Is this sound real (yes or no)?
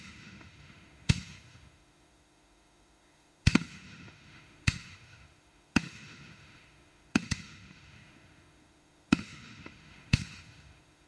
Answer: no